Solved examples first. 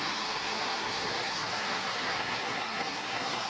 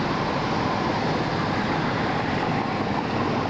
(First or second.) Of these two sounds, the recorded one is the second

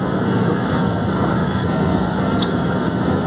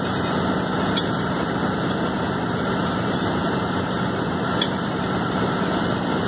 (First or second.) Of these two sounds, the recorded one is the second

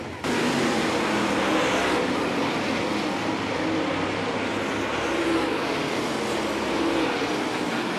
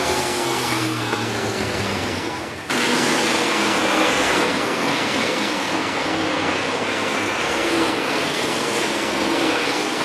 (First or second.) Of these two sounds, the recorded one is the first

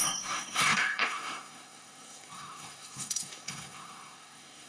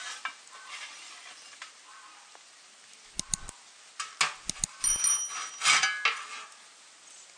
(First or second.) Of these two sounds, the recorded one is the second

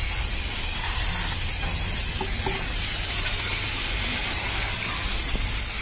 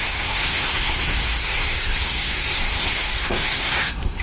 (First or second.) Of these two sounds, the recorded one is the first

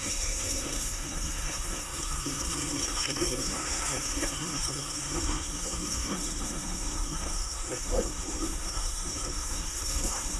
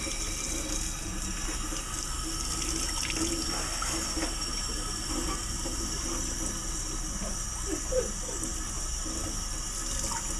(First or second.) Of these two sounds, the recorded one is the second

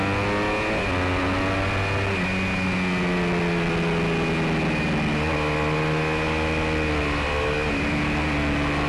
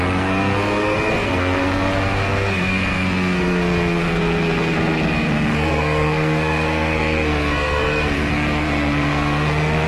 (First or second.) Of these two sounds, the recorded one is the first